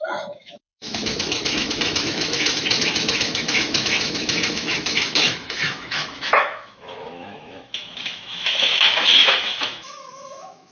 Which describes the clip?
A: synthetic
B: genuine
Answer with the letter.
A